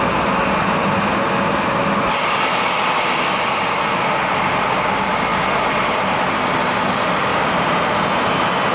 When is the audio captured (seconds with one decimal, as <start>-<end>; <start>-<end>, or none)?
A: 0.0-7.3; 8.0-8.7